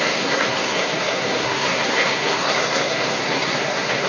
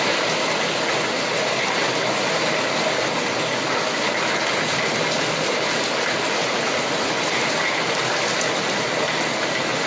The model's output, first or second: first